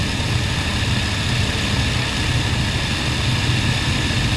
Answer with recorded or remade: recorded